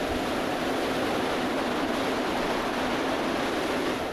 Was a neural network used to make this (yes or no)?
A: no